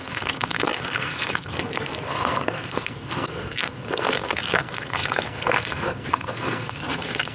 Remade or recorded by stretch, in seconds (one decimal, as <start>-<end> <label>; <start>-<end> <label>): 0.0-7.3 remade